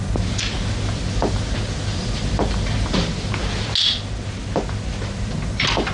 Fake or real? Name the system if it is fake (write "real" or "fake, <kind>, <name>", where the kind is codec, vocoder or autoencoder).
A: real